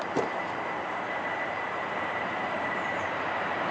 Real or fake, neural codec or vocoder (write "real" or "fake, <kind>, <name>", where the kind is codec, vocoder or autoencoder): fake, vocoder, BigVGAN v2